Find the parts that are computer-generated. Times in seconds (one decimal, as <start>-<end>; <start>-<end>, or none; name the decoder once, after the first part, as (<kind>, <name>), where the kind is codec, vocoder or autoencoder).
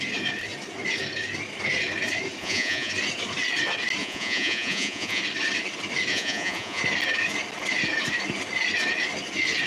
2.4-2.9 (vocoder, Vocos); 4.0-5.2; 6.1-6.8